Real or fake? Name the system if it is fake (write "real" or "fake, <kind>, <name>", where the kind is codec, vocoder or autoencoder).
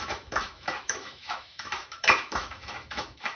fake, autoencoder, DAC-VAE